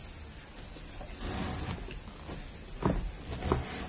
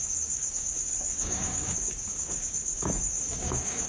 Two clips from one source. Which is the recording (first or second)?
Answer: first